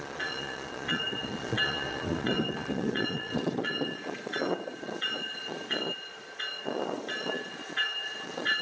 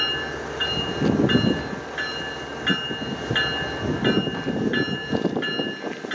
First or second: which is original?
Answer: second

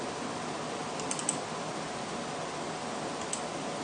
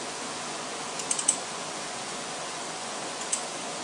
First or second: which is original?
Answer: first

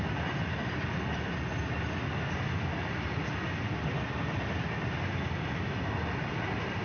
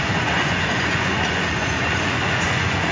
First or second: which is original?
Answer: first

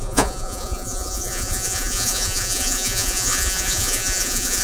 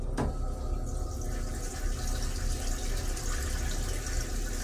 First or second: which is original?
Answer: second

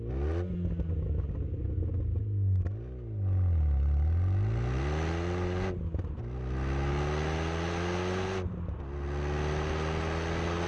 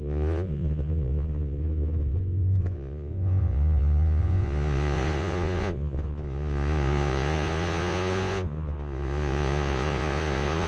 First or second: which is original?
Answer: first